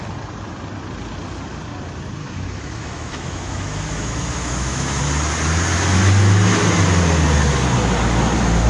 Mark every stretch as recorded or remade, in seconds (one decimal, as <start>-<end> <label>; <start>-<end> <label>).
0.0-2.2 recorded; 2.2-5.0 remade; 5.0-8.7 recorded